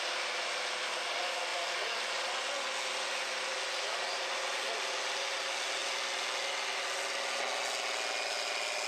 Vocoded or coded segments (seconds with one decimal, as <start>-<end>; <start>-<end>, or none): none